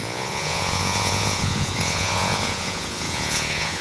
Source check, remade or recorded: remade